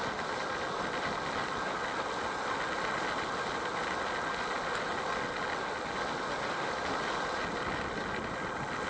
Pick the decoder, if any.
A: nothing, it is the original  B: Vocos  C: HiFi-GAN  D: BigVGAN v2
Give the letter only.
A